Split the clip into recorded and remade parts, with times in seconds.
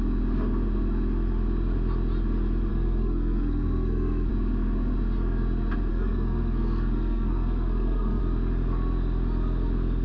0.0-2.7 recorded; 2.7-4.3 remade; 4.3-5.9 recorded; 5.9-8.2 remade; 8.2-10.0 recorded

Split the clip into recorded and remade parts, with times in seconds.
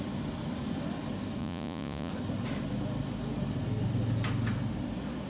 0.0-1.4 recorded; 1.4-2.1 remade; 2.1-5.3 recorded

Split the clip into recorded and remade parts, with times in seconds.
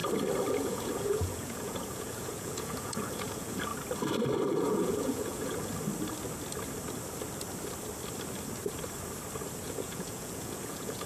0.0-0.5 recorded; 0.5-3.7 remade; 3.7-4.5 recorded; 4.5-5.7 remade; 5.7-9.6 recorded; 9.6-11.1 remade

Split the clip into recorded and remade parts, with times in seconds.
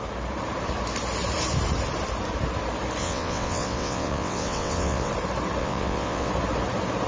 0.0-3.0 recorded; 3.0-5.1 remade; 5.1-5.6 recorded; 5.6-6.3 remade; 6.3-7.1 recorded